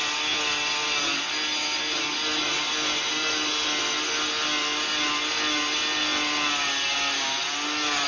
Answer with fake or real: real